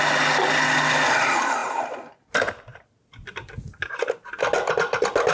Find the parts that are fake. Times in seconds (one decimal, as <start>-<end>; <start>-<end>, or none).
none